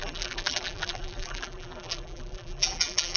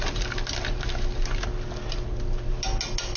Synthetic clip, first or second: first